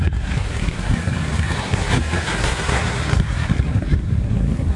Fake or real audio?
fake